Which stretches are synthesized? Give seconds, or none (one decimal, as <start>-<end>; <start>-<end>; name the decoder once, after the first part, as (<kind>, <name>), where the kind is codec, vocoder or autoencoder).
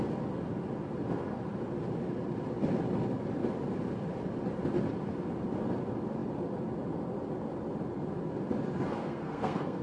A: 8.9-9.8 (codec, SNAC)